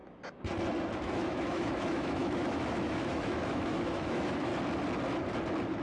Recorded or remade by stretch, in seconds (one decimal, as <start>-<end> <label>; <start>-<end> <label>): 0.0-1.0 recorded; 1.0-4.5 remade; 4.5-5.8 recorded